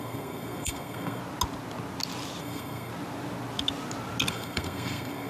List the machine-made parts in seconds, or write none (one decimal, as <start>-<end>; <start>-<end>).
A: 0.0-1.2; 2.4-2.9; 4.3-5.3